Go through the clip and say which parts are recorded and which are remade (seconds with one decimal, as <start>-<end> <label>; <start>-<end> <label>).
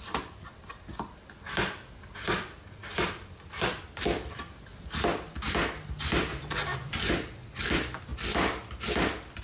0.0-2.8 recorded; 2.8-3.7 remade; 3.7-9.4 recorded